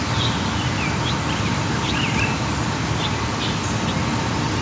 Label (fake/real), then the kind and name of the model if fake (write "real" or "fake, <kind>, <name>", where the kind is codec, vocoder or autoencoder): real